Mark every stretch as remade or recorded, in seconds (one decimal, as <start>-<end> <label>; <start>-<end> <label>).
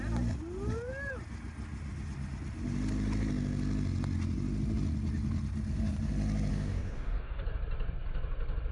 0.0-6.5 recorded; 6.5-7.4 remade; 7.4-8.7 recorded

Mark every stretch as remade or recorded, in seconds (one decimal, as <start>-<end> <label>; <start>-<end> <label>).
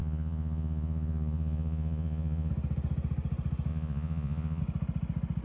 0.0-2.5 remade; 2.5-3.7 recorded; 3.7-4.6 remade; 4.6-5.4 recorded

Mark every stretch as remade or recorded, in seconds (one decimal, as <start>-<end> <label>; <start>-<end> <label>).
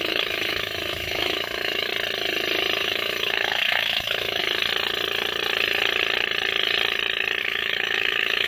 0.0-1.9 remade; 1.9-2.8 recorded; 2.8-4.4 remade; 4.4-7.4 recorded; 7.4-8.5 remade